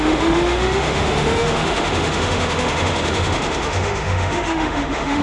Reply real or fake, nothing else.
fake